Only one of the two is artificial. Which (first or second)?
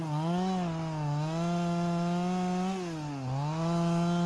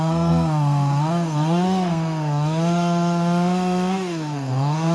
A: second